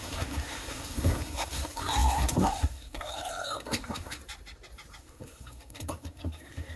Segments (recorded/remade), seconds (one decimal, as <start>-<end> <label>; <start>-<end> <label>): 0.0-4.2 remade; 4.2-5.0 recorded; 5.0-6.8 remade